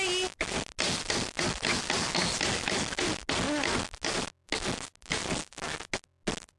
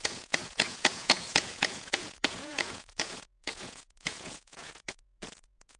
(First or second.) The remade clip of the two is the second